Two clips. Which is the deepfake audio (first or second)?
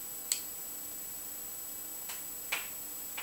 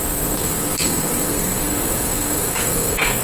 second